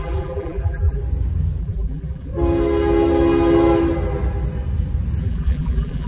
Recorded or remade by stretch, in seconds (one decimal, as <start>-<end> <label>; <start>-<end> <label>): 0.0-1.0 remade; 1.0-1.6 recorded; 1.6-2.3 remade; 2.3-5.2 recorded; 5.2-6.1 remade